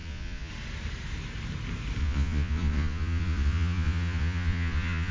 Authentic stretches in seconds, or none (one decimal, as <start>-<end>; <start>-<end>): 0.5-2.0